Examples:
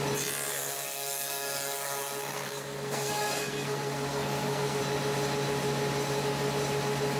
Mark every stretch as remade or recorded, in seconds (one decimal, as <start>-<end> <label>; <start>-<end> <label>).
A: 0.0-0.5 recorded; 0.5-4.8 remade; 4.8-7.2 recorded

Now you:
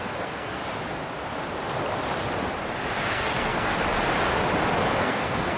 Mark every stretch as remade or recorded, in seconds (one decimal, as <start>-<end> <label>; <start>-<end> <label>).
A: 0.0-0.6 remade; 0.6-3.1 recorded; 3.1-3.7 remade; 3.7-5.0 recorded; 5.0-5.6 remade

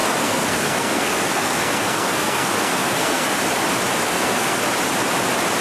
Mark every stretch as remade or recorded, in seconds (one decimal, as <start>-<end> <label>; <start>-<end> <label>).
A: 0.0-3.4 remade; 3.4-4.0 recorded; 4.0-4.6 remade; 4.6-5.6 recorded